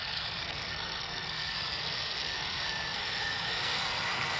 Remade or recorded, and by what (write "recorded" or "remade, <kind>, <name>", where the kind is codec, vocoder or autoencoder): remade, codec, SNAC